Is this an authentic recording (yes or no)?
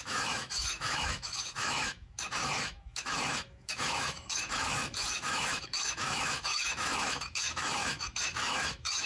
no